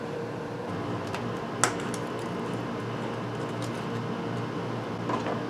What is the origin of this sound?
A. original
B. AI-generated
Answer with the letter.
A